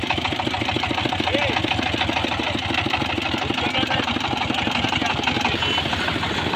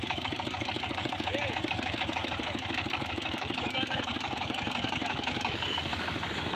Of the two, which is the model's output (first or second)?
second